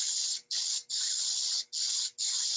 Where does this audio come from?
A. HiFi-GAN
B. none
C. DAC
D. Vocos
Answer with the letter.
B